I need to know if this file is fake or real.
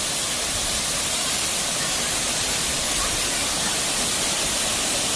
fake